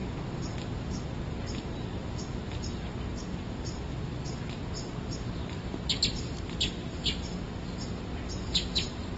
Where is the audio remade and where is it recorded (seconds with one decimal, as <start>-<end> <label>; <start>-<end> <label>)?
0.0-9.2 recorded